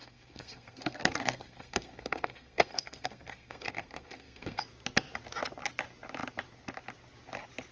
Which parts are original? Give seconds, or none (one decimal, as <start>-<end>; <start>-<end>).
4.6-7.7